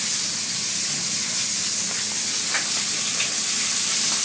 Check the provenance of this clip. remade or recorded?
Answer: recorded